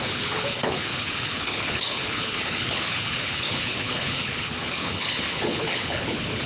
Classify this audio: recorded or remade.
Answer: remade